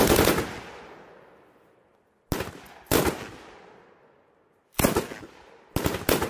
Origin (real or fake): real